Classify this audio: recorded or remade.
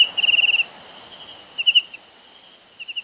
recorded